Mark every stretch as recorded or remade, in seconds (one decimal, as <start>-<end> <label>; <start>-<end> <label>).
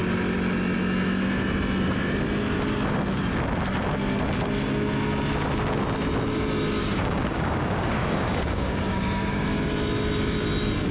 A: 0.0-6.8 recorded; 6.8-9.7 remade; 9.7-10.9 recorded